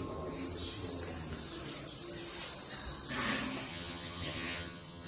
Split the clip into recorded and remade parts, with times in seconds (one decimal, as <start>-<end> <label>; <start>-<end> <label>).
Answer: 0.0-3.7 recorded; 3.7-5.1 remade